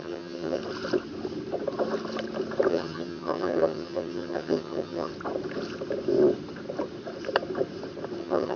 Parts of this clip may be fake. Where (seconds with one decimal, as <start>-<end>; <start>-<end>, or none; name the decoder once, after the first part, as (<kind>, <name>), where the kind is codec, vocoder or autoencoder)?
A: 0.0-0.6 (vocoder, HiFi-GAN); 2.7-5.1; 8.2-8.6